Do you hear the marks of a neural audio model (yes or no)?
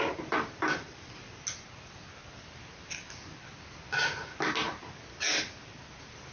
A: no